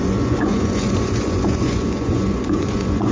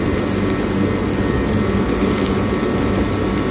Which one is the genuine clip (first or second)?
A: second